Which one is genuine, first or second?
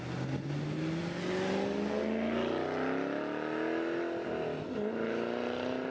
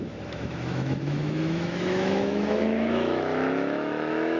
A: first